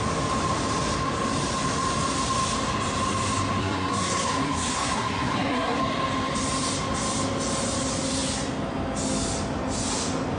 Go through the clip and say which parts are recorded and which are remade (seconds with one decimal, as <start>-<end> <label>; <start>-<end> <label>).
0.0-3.6 recorded; 3.6-5.8 remade; 5.8-10.4 recorded